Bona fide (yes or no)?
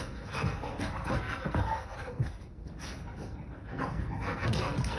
no